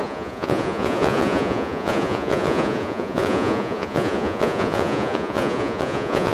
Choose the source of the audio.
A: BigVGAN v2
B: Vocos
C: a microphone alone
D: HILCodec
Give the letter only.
B